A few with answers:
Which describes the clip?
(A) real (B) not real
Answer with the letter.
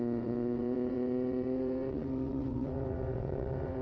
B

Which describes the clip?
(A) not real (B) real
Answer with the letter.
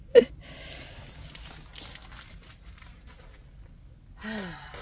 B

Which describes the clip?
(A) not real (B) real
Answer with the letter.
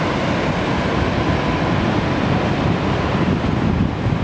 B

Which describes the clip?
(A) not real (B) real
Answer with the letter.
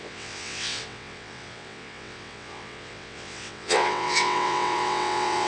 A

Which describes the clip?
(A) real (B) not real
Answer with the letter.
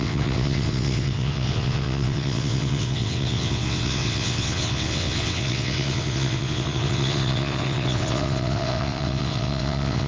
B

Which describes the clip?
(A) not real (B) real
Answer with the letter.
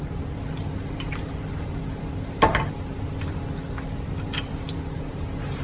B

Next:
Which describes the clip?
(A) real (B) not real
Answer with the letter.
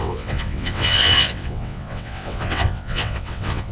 B